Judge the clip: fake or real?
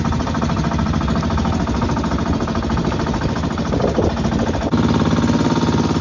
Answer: real